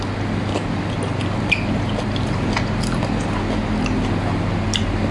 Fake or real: fake